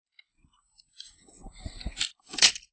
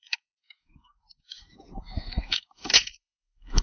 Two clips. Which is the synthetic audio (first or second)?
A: second